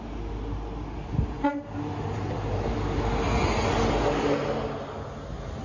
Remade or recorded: recorded